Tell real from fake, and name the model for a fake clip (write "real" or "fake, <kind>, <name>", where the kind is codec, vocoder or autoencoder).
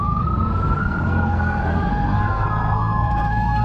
fake, codec, SNAC